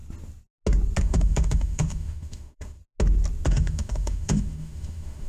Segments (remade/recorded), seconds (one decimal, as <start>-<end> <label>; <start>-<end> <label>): 0.0-1.0 recorded; 1.0-2.8 remade; 2.8-3.5 recorded; 3.5-5.3 remade